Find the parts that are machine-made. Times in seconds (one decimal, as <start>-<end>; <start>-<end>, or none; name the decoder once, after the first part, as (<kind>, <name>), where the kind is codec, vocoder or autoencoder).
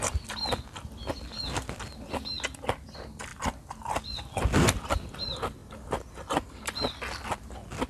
none